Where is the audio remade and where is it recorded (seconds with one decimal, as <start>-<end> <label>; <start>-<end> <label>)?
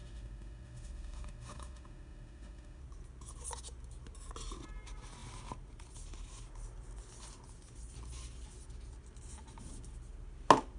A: 0.0-2.8 remade; 2.8-10.8 recorded